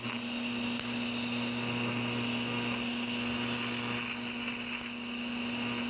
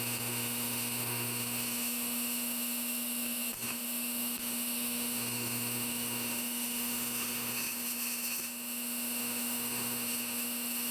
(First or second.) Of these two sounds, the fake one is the second